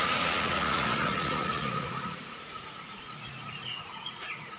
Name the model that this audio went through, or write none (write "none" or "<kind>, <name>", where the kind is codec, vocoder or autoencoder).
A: vocoder, Vocos